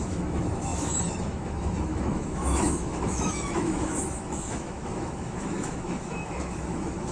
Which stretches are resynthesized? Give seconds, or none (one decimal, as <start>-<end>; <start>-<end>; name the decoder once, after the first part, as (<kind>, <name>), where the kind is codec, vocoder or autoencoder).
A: 0.0-7.1 (autoencoder, DAC-VAE)